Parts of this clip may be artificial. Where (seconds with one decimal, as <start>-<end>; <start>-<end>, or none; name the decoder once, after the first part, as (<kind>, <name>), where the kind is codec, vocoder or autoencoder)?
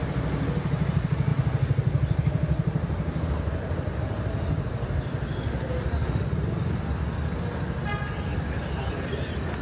none